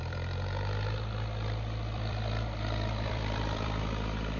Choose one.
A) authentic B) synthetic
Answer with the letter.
B